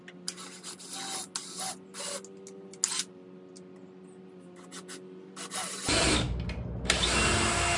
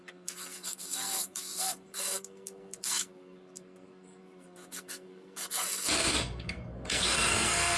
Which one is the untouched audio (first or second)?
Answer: first